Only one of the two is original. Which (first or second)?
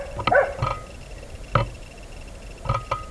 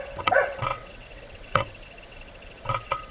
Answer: first